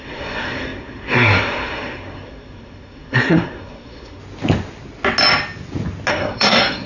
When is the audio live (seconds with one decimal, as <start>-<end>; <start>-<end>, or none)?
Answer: 4.2-6.1